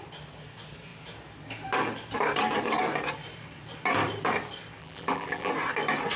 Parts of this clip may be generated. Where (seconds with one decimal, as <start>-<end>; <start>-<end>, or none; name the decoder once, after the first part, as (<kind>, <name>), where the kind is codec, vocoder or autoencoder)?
4.8-5.5 (vocoder, BigVGAN v2)